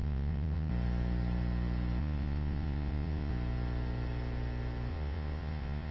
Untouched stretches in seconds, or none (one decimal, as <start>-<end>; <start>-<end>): 0.7-2.0; 3.3-4.9